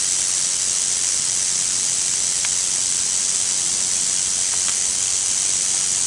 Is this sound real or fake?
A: real